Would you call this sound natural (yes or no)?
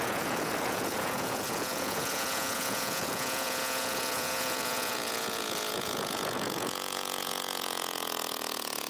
no